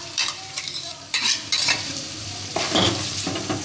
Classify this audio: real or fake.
fake